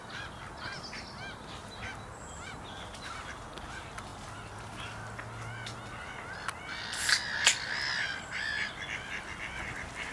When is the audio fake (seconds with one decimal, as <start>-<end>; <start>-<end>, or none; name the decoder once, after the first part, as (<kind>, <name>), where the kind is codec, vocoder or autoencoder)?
none